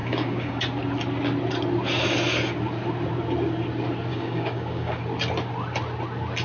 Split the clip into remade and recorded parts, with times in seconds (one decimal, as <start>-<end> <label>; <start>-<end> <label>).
0.0-0.6 remade; 0.6-4.1 recorded; 4.1-5.0 remade; 5.0-6.4 recorded